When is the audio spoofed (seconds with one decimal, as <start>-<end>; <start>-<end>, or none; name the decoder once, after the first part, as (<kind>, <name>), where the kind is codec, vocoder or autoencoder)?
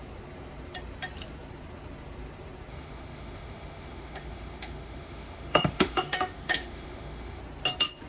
2.7-7.4 (autoencoder, DAC-VAE)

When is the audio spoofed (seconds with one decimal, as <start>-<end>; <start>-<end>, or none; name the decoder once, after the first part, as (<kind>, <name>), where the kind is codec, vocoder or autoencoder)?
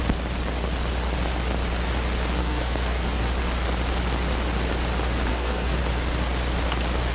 2.4-3.2 (codec, SNAC); 5.3-5.8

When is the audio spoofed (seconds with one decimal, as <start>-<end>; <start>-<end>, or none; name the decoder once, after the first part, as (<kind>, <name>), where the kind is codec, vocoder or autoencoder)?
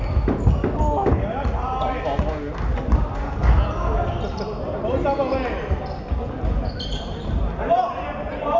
none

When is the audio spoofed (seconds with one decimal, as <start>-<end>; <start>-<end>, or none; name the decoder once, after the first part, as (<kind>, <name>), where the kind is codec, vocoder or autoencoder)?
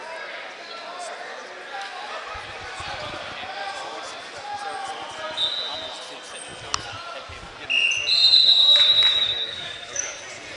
9.1-10.2 (codec, DAC)